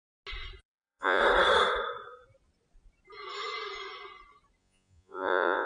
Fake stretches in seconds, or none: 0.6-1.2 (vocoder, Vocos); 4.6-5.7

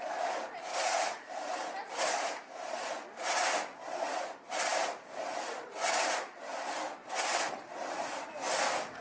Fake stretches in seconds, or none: 0.7-1.3 (vocoder, Vocos)

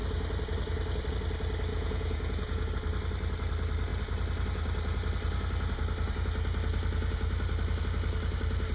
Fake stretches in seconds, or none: 1.7-2.7 (vocoder, Vocos)

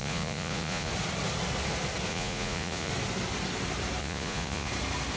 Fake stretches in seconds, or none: 0.0-0.9 (vocoder, Vocos); 2.1-2.9; 4.0-4.7

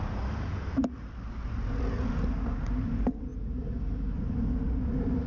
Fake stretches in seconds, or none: none

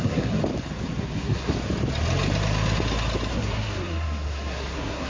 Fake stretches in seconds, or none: 0.0-0.4 (codec, SNAC); 1.0-1.6; 3.3-5.1